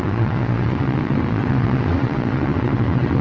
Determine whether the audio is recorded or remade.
remade